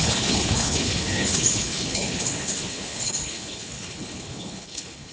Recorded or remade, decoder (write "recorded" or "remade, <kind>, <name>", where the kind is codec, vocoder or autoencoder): remade, codec, HILCodec